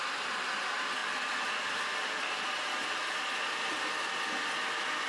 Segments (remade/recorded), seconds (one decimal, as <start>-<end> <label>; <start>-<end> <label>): 0.0-5.1 recorded